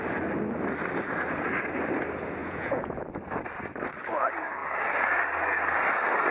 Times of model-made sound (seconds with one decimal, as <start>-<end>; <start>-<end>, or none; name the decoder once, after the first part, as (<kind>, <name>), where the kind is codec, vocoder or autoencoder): 2.4-3.0 (vocoder, Vocos)